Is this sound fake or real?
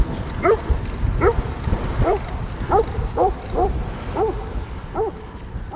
real